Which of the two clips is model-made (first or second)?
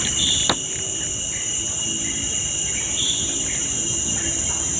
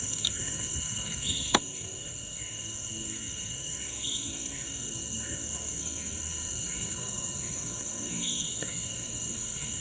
second